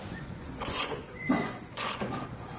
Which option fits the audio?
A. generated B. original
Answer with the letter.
A